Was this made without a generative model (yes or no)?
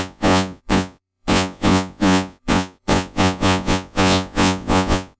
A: no